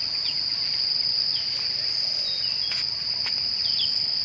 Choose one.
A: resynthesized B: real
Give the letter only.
B